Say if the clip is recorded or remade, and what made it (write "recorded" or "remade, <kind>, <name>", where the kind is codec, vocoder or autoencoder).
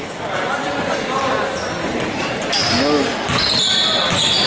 recorded